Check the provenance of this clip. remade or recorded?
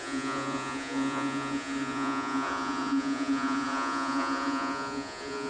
remade